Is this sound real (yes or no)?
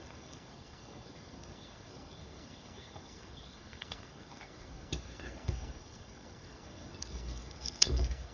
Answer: no